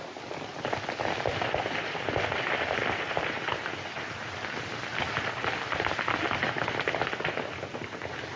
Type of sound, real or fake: real